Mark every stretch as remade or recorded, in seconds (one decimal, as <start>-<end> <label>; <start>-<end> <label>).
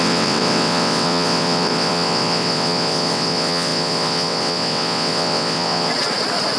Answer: 0.0-5.9 remade; 5.9-6.6 recorded